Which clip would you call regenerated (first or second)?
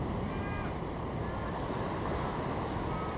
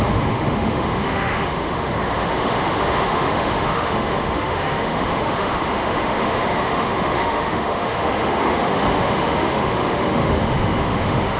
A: second